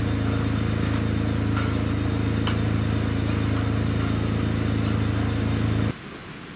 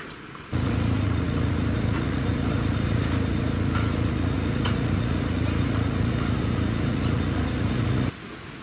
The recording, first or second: first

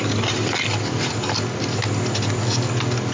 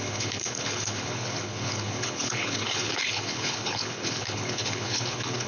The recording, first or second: first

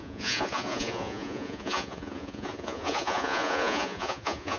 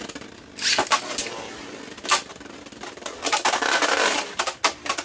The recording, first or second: second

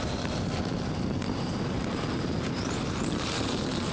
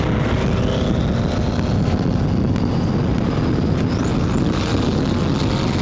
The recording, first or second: second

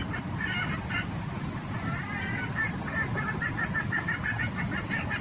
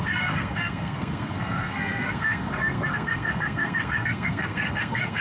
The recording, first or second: first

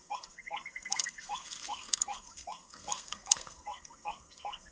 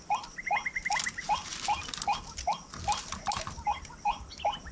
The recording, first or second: second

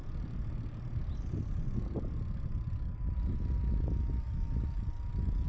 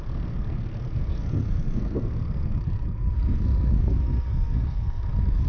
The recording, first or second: first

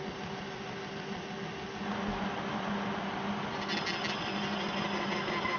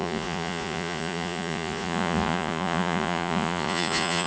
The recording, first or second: first